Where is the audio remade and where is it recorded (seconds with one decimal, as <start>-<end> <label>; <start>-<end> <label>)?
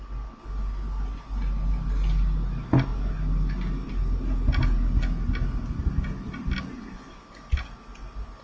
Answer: 0.0-8.4 recorded